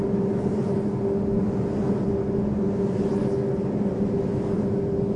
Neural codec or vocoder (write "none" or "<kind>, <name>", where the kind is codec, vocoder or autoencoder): none